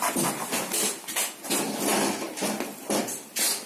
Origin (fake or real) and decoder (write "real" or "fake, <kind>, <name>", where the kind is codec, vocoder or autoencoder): real